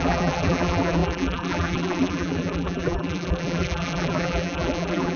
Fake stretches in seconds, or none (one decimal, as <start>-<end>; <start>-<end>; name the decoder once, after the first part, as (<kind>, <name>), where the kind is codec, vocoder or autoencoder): 0.0-5.2 (vocoder, BigVGAN v2)